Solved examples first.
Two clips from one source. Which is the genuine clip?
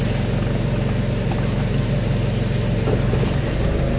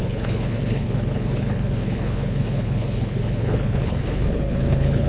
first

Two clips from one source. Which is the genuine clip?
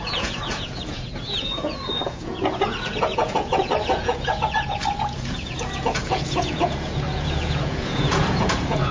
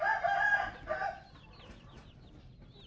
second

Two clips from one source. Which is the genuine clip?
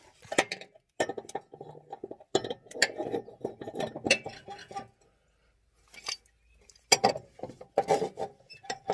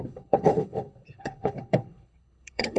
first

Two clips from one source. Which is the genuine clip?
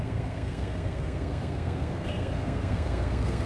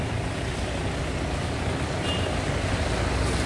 second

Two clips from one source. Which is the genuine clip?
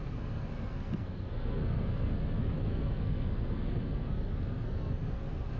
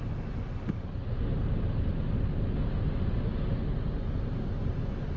second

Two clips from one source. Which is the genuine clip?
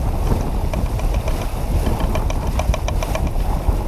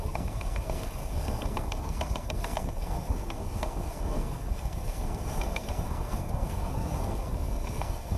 first